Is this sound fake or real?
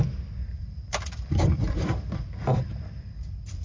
fake